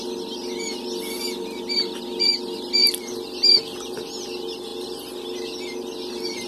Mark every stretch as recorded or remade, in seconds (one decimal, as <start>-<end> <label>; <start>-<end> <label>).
0.0-6.5 recorded